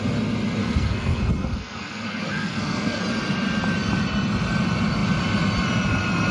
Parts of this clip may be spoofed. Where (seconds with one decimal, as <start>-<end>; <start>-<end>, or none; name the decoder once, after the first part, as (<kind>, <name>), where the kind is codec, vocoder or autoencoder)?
0.6-3.0 (codec, SNAC)